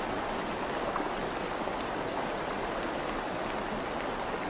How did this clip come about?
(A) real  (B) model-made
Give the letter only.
A